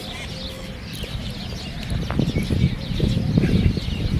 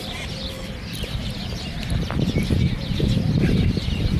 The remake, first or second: second